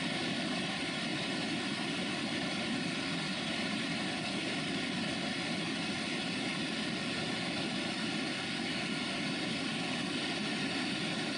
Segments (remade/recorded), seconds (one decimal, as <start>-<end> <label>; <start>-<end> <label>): 0.0-11.4 recorded